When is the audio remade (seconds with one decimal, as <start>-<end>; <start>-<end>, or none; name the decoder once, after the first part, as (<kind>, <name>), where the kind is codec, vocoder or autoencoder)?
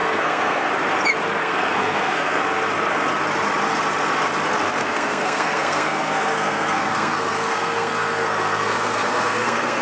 0.0-0.7 (codec, SNAC); 1.4-2.4; 4.8-9.8